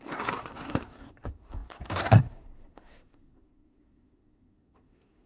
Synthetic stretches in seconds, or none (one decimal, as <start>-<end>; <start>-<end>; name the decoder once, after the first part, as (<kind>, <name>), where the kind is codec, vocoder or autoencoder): 0.0-5.3 (codec, SNAC)